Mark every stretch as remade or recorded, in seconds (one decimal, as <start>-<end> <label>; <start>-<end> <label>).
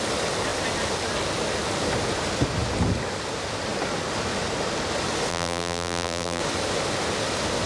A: 0.0-5.3 recorded; 5.3-6.4 remade; 6.4-7.7 recorded